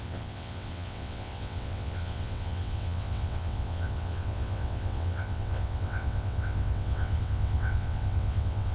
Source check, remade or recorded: remade